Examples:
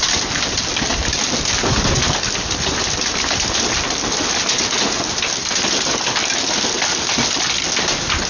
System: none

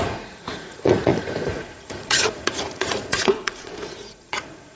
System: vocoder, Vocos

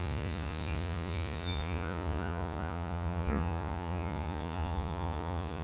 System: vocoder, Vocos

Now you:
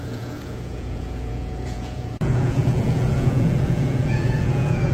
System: vocoder, Vocos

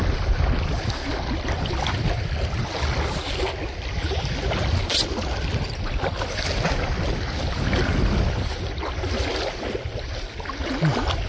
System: none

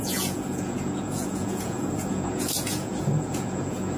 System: vocoder, Vocos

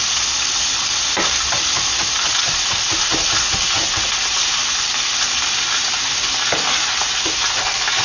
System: none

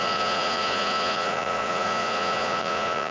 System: vocoder, Vocos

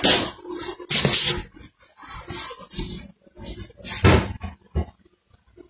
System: none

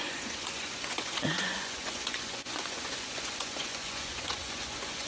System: vocoder, Vocos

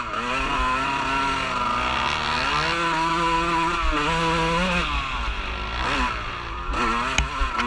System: none